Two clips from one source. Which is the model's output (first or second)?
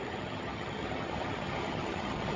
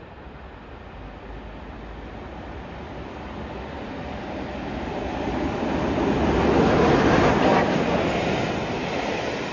first